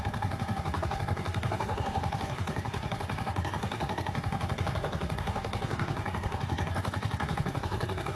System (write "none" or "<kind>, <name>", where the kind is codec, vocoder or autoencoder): codec, SNAC